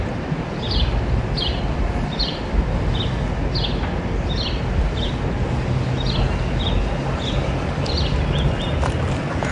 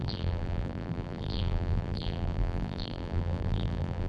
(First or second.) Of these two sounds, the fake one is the second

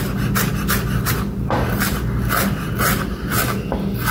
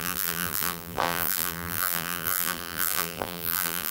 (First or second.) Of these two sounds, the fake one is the second